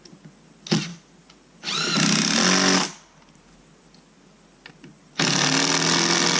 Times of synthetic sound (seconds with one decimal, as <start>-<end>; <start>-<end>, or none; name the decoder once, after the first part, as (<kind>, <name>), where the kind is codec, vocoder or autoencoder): none